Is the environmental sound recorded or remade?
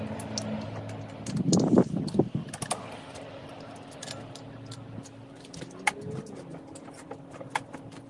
recorded